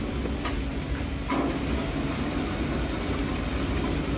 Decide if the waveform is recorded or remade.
recorded